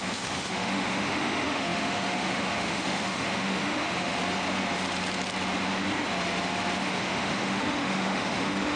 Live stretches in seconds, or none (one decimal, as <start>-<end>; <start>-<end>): 4.2-6.8